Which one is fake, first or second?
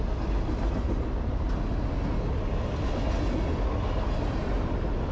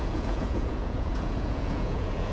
second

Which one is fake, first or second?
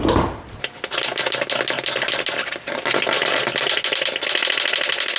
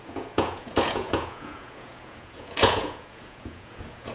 second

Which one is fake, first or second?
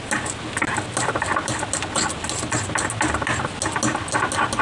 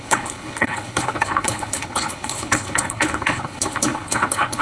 second